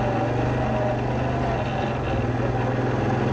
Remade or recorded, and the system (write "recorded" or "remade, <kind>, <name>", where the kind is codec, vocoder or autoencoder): recorded